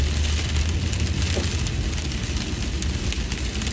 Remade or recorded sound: recorded